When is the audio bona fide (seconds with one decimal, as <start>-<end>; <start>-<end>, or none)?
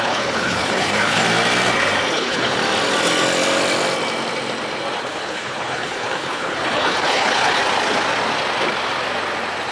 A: 1.2-2.1; 2.6-5.0; 7.6-9.7